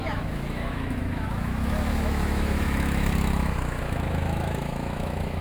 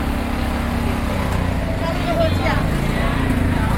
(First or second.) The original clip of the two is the second